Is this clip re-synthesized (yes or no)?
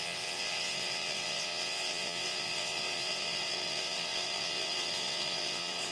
yes